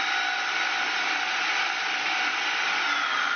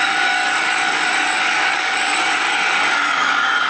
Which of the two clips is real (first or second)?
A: first